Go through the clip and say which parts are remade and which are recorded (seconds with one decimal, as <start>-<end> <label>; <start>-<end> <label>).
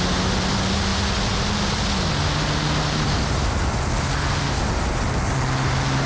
0.0-6.1 recorded